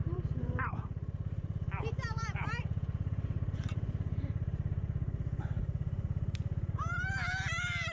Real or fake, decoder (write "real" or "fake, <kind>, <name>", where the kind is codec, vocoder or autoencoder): fake, vocoder, BigVGAN v2